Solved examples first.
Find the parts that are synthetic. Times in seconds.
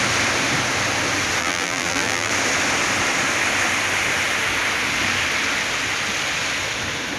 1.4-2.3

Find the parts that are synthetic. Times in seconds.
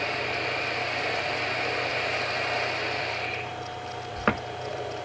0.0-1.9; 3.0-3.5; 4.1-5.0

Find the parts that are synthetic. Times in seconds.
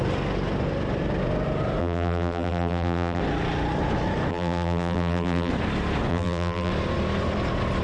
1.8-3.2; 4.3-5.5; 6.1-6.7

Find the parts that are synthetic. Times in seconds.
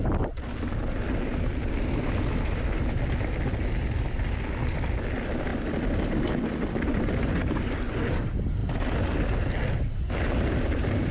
none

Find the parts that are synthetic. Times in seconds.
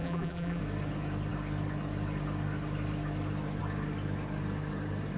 0.0-0.6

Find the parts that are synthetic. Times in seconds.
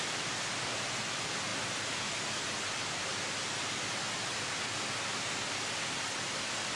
none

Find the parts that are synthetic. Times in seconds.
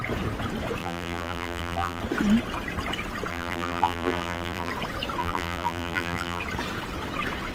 0.8-2.0; 3.3-4.7; 5.2-6.4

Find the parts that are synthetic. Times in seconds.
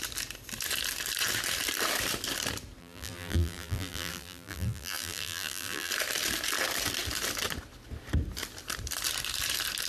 2.8-5.9